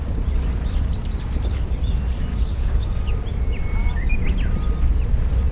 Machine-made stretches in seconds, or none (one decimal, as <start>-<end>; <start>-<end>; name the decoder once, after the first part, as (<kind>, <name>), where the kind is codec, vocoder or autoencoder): 2.3-3.1 (codec, DAC)